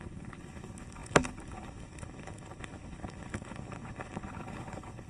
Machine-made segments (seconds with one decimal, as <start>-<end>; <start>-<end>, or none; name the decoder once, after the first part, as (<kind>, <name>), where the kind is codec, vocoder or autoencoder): 0.0-5.1 (codec, HILCodec)